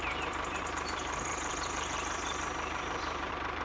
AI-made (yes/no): yes